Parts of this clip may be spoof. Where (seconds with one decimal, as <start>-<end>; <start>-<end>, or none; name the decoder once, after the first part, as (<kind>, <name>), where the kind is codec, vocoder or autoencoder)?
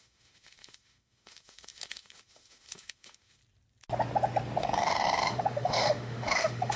0.0-3.4 (autoencoder, DAC-VAE); 4.6-6.8